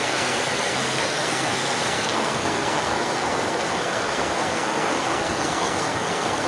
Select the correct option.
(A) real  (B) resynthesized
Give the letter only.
B